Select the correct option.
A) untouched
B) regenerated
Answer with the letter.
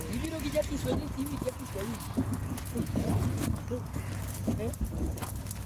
A